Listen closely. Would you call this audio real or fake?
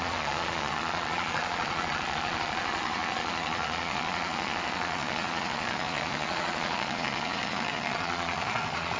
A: fake